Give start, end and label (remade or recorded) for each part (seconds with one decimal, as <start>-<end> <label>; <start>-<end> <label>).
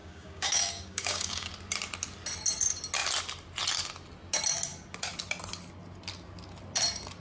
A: 0.0-1.5 remade; 1.5-7.2 recorded